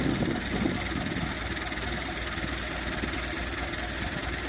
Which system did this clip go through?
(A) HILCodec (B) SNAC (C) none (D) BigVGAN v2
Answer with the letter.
C